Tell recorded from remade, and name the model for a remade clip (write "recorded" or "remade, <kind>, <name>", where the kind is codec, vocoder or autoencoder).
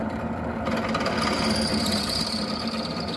recorded